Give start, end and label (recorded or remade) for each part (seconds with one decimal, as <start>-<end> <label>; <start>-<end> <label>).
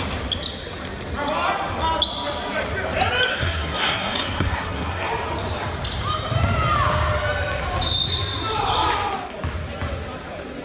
0.0-3.3 recorded; 3.3-5.1 remade; 5.1-10.6 recorded